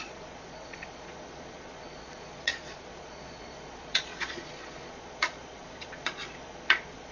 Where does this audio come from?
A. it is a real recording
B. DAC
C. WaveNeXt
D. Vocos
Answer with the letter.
D